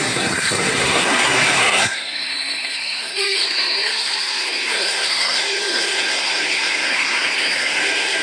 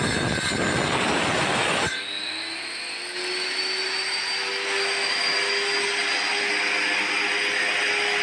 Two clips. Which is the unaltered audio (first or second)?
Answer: second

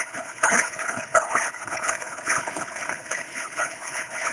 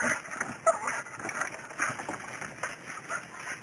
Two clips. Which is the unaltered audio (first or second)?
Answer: second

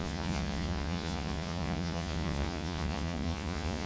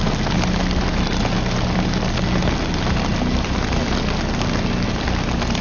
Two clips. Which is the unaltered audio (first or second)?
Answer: second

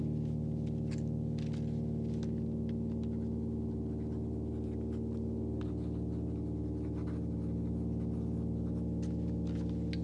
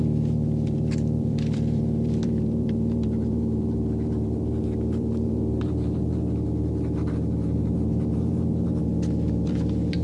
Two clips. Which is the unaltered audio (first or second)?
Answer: first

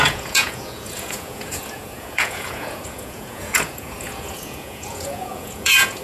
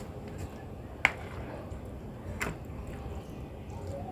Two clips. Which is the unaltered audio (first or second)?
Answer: second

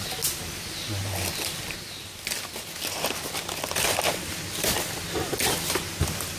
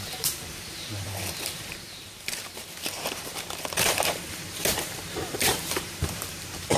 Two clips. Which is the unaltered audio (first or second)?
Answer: first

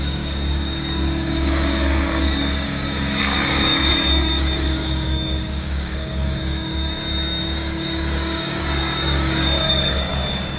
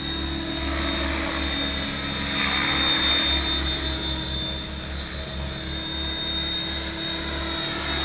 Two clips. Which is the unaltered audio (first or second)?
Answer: second